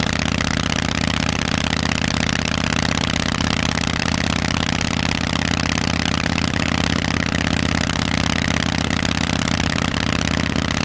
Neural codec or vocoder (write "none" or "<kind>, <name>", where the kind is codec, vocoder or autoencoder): none